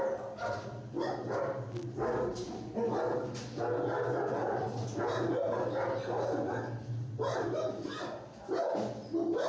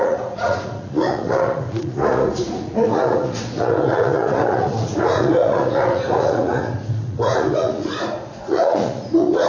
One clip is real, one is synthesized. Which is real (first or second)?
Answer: first